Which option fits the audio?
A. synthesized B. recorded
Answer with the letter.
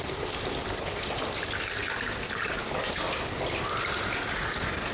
B